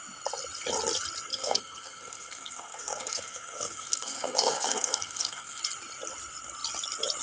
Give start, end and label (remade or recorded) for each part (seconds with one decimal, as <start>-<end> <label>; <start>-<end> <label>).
0.0-1.3 recorded; 1.3-5.6 remade; 5.6-7.2 recorded